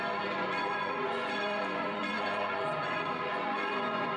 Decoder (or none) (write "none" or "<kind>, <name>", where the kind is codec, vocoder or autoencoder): vocoder, Vocos